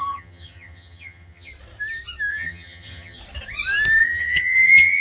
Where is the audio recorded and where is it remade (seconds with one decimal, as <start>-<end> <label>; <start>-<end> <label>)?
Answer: 0.0-1.5 remade; 1.5-2.3 recorded; 2.3-3.2 remade; 3.2-4.0 recorded; 4.0-5.0 remade

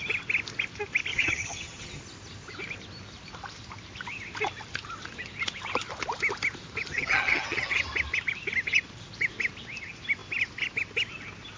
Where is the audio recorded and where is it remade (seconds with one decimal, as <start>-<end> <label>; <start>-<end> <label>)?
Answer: 0.0-1.1 recorded; 1.1-2.0 remade; 2.0-6.9 recorded; 6.9-7.8 remade; 7.8-11.6 recorded

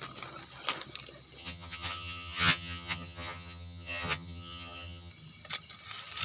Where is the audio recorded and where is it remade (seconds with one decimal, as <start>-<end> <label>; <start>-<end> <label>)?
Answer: 0.0-1.4 recorded; 1.4-5.1 remade; 5.1-6.2 recorded

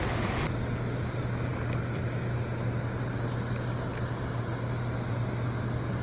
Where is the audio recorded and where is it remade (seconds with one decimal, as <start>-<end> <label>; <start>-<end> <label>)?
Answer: 0.0-6.0 recorded

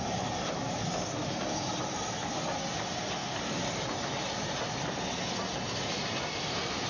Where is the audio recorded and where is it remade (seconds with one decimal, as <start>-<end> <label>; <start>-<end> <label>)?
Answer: 0.0-6.9 recorded

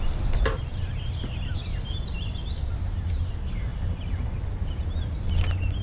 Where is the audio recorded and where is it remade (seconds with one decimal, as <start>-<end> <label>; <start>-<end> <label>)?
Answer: 0.0-5.8 recorded

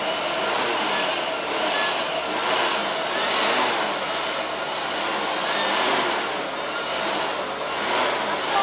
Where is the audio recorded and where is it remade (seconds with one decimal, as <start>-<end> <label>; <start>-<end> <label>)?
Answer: 0.0-8.6 recorded